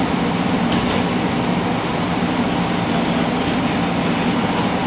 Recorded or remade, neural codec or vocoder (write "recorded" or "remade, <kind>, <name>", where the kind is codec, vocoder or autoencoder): recorded